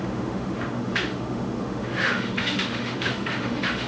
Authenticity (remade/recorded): remade